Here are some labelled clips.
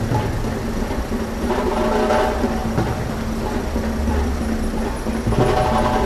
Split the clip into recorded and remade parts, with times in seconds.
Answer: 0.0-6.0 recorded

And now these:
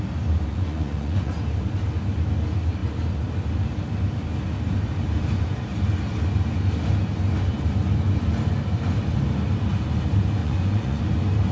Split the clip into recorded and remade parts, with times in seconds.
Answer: 0.0-0.5 recorded; 0.5-1.3 remade; 1.3-10.4 recorded; 10.4-11.0 remade; 11.0-11.5 recorded

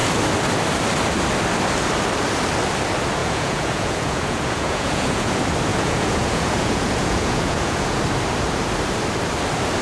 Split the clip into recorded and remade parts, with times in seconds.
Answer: 0.0-3.2 recorded; 3.2-5.3 remade; 5.3-5.7 recorded; 5.7-8.0 remade; 8.0-9.8 recorded